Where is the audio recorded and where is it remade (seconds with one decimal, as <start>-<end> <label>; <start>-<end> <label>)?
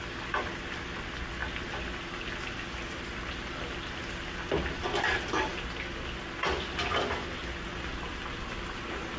0.0-9.2 recorded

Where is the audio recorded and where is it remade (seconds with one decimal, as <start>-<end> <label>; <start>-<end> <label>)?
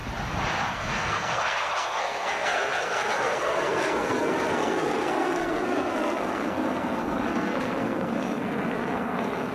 0.0-0.7 recorded; 0.7-9.5 remade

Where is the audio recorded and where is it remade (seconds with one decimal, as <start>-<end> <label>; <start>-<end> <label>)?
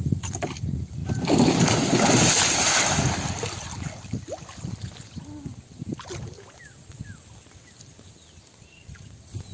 0.0-9.5 recorded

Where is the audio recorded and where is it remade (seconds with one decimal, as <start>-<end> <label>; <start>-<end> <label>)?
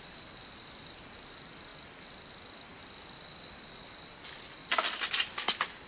0.0-5.9 recorded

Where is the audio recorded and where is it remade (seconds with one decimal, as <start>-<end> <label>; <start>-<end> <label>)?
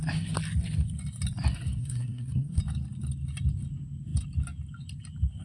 0.0-1.8 recorded; 1.8-2.6 remade; 2.6-5.4 recorded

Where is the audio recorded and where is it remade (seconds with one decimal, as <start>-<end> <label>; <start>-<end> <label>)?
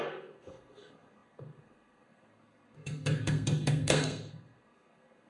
0.0-5.3 remade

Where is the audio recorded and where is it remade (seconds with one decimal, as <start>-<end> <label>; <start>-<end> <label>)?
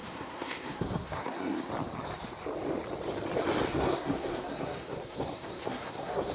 0.0-1.7 remade; 1.7-3.7 recorded; 3.7-6.3 remade